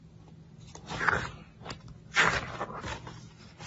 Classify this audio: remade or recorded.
recorded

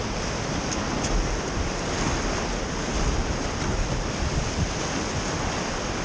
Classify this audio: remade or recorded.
recorded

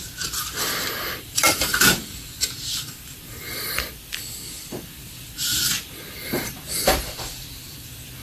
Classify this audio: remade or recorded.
remade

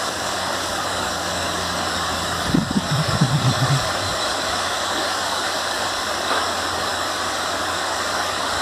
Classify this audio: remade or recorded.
remade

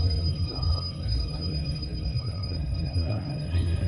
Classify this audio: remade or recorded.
remade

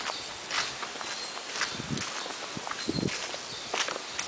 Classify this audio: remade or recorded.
recorded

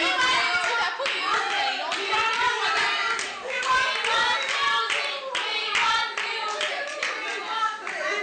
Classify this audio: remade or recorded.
recorded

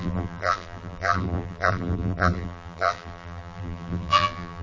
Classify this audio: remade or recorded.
remade